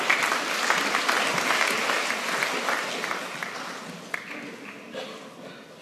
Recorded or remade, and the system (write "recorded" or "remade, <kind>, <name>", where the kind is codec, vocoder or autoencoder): recorded